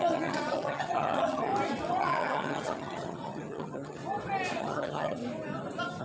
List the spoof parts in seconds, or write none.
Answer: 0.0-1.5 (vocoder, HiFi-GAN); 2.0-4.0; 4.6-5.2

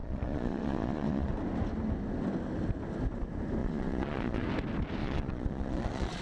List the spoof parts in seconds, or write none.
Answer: 0.0-1.3 (vocoder, Vocos); 3.6-4.5; 5.0-6.2

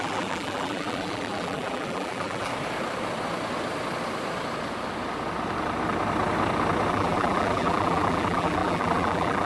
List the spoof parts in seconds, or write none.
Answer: 0.0-2.5 (vocoder, BigVGAN v2); 6.9-9.5

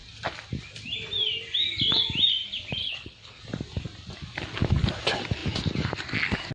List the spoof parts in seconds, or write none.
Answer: 2.8-3.4 (codec, HILCodec)

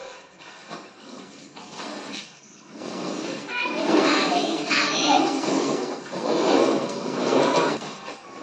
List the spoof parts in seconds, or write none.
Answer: 0.0-8.4 (codec, SNAC)

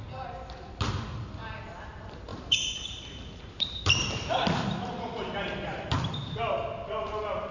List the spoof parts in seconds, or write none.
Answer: 2.3-6.4 (vocoder, BigVGAN v2)

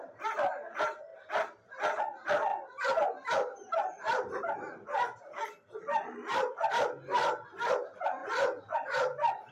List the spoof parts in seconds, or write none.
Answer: 8.2-9.5 (vocoder, BigVGAN v2)

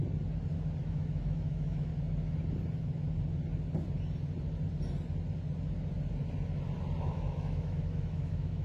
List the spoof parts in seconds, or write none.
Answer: 0.8-1.9 (autoencoder, DAC-VAE); 7.0-8.6